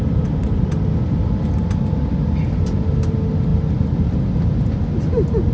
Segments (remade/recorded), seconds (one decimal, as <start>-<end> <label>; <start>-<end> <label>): 0.0-5.5 recorded